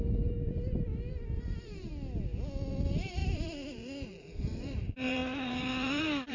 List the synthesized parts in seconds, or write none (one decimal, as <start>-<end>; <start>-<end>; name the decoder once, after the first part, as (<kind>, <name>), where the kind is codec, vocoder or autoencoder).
0.0-1.9 (vocoder, BigVGAN v2); 2.7-6.3